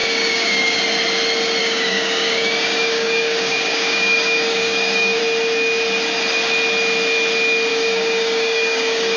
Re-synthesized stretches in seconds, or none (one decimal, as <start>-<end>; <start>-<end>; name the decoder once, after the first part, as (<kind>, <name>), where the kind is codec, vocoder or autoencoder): 0.0-0.8 (codec, DAC); 1.6-5.2; 7.7-9.2